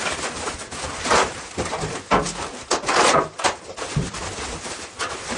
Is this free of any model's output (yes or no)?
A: yes